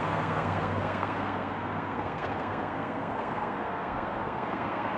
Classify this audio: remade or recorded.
remade